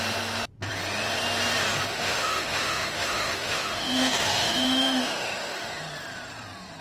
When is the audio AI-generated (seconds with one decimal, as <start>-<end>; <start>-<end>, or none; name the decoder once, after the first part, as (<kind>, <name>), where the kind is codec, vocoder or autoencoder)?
1.9-5.8 (autoencoder, DAC-VAE)